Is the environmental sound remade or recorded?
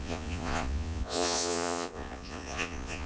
remade